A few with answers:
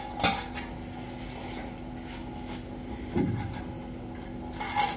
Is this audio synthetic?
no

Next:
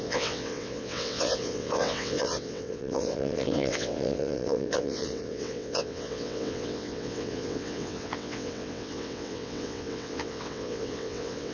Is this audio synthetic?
yes